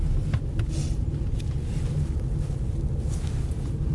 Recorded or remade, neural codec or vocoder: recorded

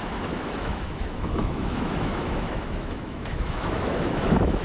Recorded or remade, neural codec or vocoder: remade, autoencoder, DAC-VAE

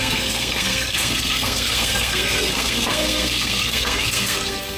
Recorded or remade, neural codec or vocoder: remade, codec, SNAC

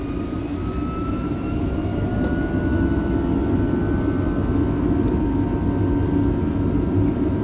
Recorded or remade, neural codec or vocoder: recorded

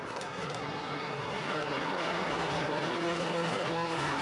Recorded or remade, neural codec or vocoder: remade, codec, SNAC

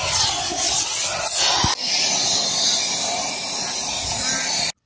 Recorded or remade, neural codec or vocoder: recorded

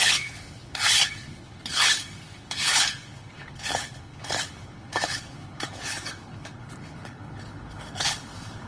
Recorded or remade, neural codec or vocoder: remade, codec, HILCodec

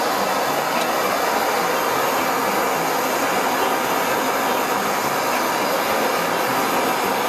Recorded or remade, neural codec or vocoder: recorded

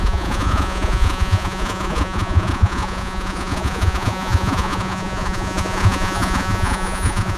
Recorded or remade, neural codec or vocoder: remade, vocoder, Vocos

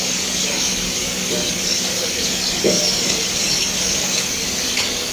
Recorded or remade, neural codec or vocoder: remade, codec, DAC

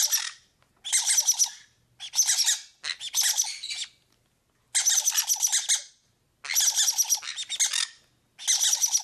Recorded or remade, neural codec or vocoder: recorded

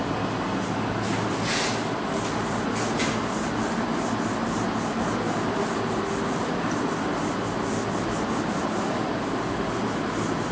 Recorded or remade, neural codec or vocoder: recorded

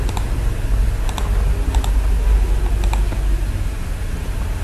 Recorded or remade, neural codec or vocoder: recorded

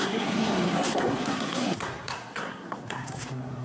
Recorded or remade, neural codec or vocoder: remade, codec, SNAC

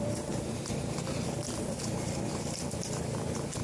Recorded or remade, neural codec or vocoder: remade, vocoder, BigVGAN v2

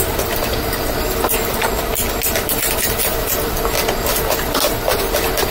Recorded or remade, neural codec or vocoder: recorded